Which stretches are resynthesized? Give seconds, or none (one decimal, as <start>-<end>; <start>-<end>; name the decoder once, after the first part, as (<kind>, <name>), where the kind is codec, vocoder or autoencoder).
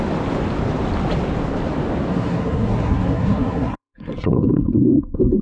2.1-5.4 (codec, SNAC)